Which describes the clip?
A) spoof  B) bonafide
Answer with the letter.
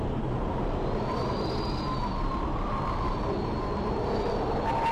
A